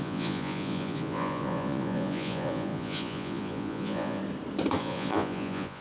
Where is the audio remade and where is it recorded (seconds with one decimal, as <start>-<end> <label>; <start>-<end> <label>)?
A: 0.0-4.2 remade; 4.2-4.8 recorded; 4.8-5.8 remade